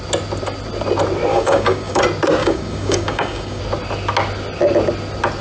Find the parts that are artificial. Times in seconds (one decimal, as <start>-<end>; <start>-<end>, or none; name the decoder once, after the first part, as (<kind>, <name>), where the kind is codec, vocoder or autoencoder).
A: 1.3-2.0 (codec, DAC); 2.4-3.6